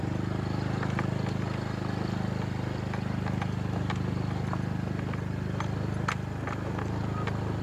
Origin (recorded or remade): recorded